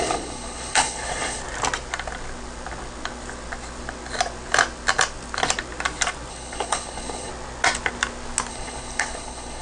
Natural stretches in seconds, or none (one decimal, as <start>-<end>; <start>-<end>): 1.4-6.3; 7.3-8.5